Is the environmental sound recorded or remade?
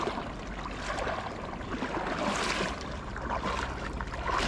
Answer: recorded